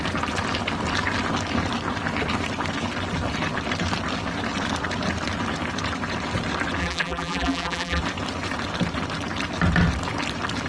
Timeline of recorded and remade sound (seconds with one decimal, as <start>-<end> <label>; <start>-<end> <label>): 0.0-6.8 recorded; 6.8-8.0 remade; 8.0-10.7 recorded